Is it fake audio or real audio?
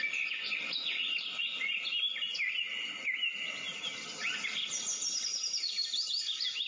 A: real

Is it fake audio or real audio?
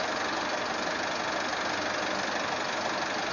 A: real